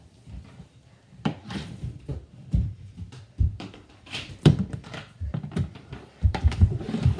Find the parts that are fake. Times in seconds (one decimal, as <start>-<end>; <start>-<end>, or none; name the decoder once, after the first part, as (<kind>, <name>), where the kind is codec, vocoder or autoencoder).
0.0-7.2 (vocoder, BigVGAN v2)